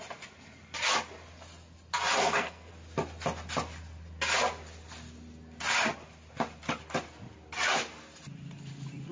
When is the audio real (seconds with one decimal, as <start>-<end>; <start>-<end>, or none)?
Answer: 0.0-2.2; 2.7-9.1